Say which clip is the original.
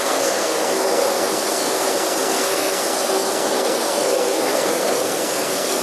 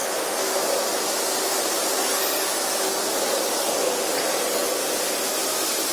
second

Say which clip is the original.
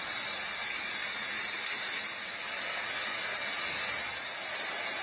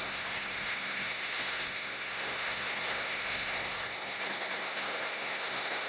first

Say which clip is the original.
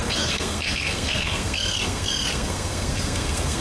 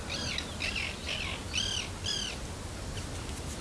second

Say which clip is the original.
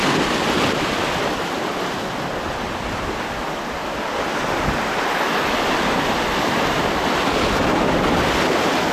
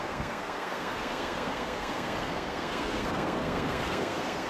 first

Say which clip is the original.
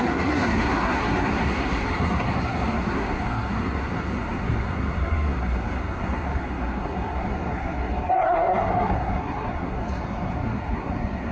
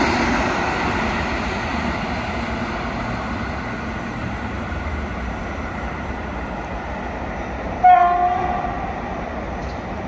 second